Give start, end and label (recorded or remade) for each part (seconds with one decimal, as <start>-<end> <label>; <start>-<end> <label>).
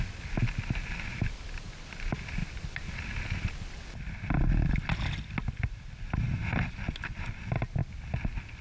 0.0-8.6 recorded